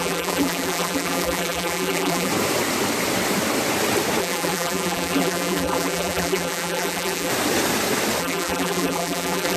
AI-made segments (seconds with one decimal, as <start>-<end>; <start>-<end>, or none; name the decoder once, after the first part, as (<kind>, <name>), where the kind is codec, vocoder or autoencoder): 0.0-2.3 (vocoder, BigVGAN v2); 4.2-7.3; 8.2-9.6